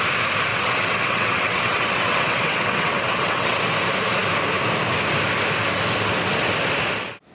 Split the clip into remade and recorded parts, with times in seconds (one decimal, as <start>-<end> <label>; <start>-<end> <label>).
0.0-0.5 recorded; 0.5-3.6 remade; 3.6-7.3 recorded